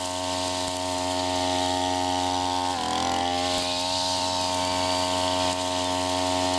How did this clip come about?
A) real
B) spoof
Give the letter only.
A